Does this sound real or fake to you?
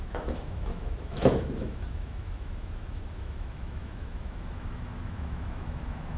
fake